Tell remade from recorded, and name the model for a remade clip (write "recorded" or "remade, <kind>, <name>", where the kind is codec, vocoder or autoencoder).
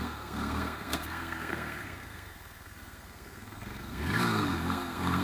remade, codec, SNAC